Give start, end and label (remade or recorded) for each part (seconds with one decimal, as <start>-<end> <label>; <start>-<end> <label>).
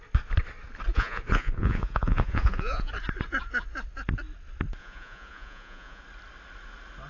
0.0-0.9 recorded; 0.9-2.9 remade; 2.9-4.8 recorded; 4.8-6.0 remade; 6.0-7.1 recorded